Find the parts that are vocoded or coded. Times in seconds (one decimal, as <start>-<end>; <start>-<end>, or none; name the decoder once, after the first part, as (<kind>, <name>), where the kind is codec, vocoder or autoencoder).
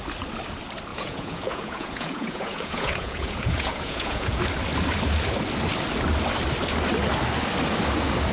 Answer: 0.9-4.4 (vocoder, Vocos)